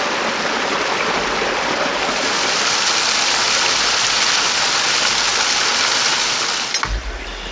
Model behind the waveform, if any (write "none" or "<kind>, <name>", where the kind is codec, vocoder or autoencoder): none